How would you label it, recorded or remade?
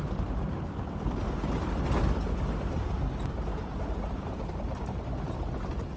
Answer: recorded